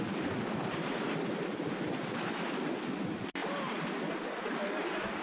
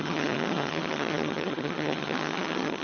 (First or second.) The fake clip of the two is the second